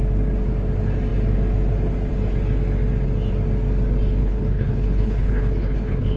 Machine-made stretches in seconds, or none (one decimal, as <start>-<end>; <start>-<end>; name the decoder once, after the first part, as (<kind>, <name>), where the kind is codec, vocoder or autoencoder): 4.2-6.2 (codec, HILCodec)